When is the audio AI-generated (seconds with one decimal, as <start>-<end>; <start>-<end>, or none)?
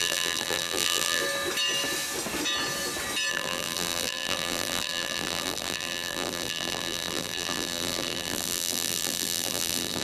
0.0-1.2; 3.3-10.0